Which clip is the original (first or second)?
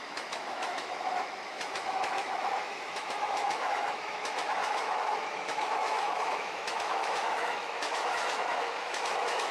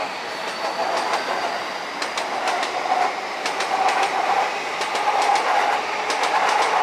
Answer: second